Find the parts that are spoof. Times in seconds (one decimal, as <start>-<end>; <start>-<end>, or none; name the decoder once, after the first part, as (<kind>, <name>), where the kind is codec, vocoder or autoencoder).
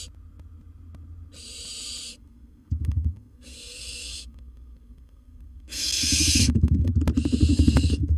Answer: 2.1-6.9 (codec, SNAC); 7.5-8.2